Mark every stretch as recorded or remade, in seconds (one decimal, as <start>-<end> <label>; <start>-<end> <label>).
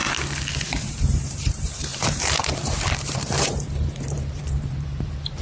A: 0.0-0.5 recorded; 0.5-5.4 remade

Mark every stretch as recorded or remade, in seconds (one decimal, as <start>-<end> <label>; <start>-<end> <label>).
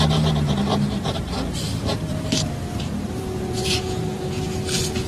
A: 0.0-0.7 recorded; 0.7-3.8 remade; 3.8-5.1 recorded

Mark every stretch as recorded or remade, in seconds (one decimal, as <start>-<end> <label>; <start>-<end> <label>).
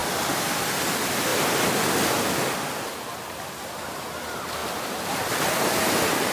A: 0.0-4.6 recorded; 4.6-5.5 remade; 5.5-6.3 recorded